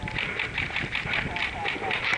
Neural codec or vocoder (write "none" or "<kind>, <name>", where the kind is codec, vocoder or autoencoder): none